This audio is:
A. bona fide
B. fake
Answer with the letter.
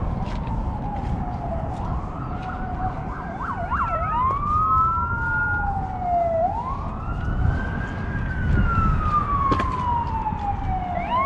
A